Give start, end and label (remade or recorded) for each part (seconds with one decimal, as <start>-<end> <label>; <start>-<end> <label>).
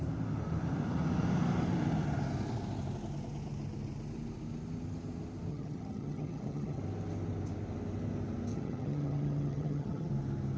0.0-5.5 recorded; 5.5-6.8 remade; 6.8-8.5 recorded; 8.5-10.1 remade; 10.1-10.6 recorded